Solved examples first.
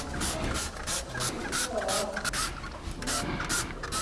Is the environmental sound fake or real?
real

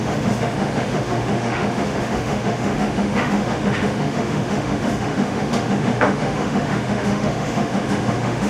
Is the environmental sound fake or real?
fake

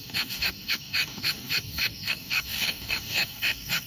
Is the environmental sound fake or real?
fake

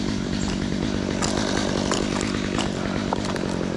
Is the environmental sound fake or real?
real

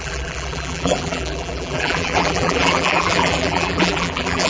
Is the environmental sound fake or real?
fake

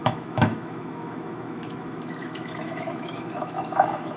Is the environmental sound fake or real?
fake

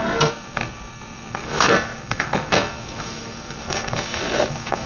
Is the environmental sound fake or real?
fake